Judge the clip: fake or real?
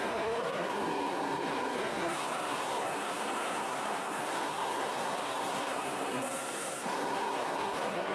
fake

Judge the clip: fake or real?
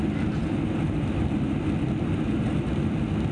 real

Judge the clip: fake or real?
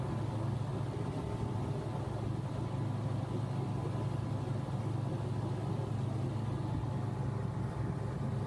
real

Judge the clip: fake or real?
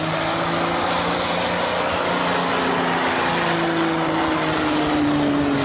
real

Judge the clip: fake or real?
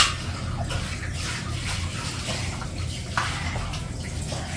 real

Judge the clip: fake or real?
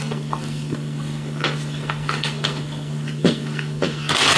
fake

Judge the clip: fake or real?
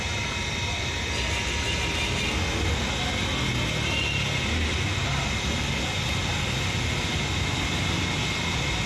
real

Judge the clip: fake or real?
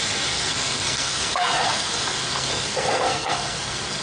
fake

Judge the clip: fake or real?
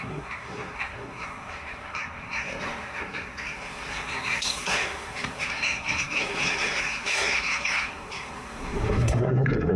fake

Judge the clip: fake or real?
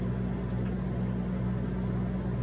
real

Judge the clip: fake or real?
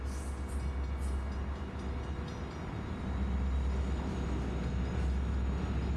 real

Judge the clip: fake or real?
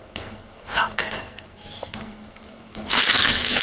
fake